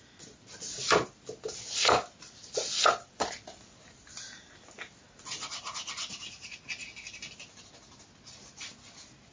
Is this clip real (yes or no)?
yes